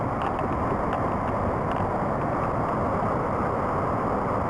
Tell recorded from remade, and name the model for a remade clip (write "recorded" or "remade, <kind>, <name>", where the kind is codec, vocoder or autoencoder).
recorded